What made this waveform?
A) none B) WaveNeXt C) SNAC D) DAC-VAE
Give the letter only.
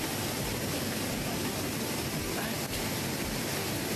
A